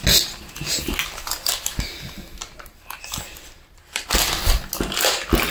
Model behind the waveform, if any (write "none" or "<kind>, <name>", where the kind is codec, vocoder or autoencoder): none